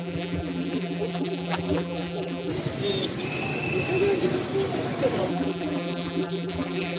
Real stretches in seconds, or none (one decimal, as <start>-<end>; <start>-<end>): 2.5-5.3